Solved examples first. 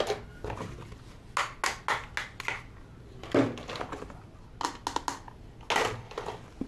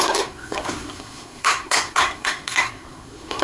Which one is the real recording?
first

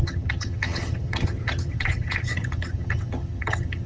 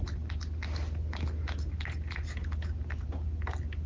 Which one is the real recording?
second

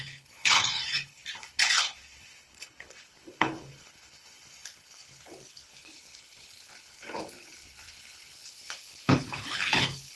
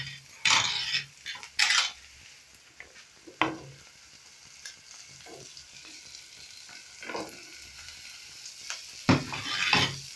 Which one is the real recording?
second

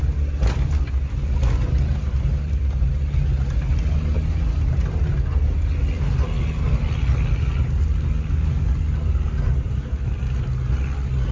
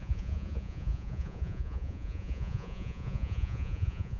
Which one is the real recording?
first